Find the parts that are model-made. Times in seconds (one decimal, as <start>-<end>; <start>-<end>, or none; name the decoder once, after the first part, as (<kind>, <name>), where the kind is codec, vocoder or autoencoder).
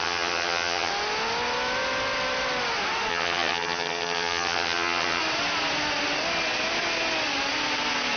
0.0-0.9 (vocoder, HiFi-GAN); 3.1-5.2